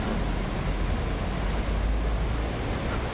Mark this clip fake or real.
real